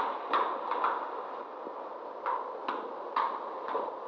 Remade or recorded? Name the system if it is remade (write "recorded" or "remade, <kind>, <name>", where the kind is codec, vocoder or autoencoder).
recorded